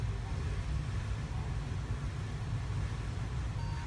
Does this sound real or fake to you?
real